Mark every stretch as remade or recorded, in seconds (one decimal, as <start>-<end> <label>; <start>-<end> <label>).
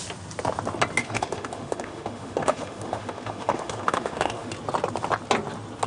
0.0-1.0 recorded; 1.0-4.5 remade; 4.5-5.9 recorded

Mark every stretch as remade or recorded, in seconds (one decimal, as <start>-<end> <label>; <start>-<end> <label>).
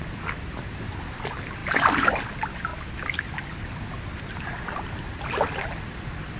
0.0-6.4 recorded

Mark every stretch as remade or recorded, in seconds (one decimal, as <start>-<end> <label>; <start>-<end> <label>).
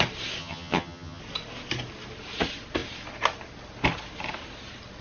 0.0-0.4 recorded; 0.4-1.2 remade; 1.2-5.0 recorded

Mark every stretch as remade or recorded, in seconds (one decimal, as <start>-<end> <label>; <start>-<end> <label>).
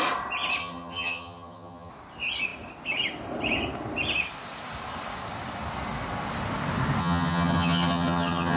0.0-0.6 recorded; 0.6-1.9 remade; 1.9-7.0 recorded; 7.0-8.6 remade